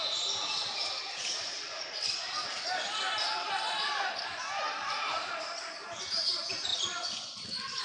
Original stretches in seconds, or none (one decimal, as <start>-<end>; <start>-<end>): 0.0-0.6; 4.3-6.7